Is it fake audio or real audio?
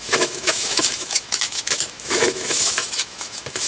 fake